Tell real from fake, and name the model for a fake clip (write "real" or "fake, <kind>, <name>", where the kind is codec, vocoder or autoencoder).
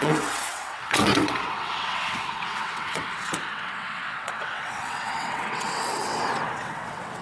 fake, vocoder, WaveNeXt